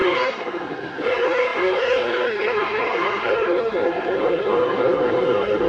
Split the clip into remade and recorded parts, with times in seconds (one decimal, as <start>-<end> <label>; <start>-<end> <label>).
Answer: 0.0-5.7 remade